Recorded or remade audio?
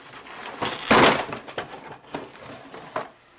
recorded